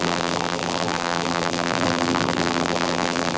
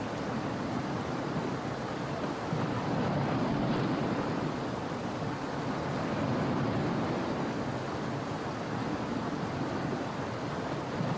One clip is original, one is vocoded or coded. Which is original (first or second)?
second